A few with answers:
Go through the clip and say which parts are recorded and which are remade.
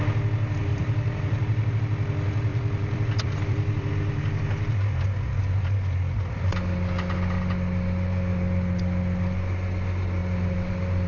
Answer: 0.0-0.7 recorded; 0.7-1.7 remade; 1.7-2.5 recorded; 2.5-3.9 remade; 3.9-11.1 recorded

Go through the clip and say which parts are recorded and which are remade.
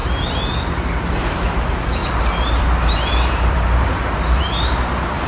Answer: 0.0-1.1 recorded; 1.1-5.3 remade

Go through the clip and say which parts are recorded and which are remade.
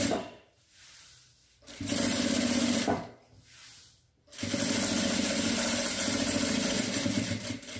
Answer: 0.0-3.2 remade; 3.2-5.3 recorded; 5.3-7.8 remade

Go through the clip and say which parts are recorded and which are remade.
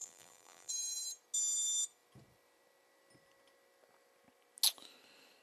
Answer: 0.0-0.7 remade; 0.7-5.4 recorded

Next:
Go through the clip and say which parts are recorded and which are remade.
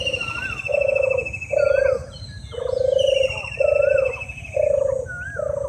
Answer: 0.0-5.7 recorded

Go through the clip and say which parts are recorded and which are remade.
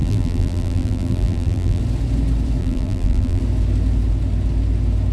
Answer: 0.0-1.8 remade; 1.8-2.6 recorded; 2.6-3.4 remade; 3.4-5.1 recorded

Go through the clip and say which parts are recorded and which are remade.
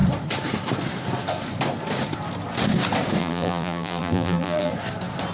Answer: 0.0-3.2 recorded; 3.2-4.7 remade; 4.7-5.3 recorded